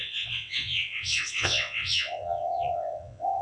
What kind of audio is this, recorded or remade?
remade